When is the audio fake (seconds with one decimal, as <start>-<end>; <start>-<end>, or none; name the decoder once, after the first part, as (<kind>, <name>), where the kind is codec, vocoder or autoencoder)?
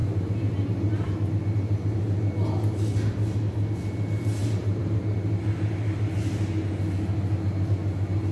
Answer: 0.0-1.3 (vocoder, BigVGAN v2); 4.4-5.0